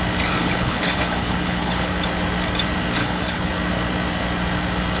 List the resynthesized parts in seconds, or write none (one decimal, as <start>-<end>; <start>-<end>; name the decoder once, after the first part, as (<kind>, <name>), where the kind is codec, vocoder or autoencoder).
0.4-1.9 (codec, HILCodec); 3.0-3.5